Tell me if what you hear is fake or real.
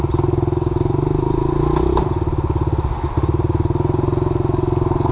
real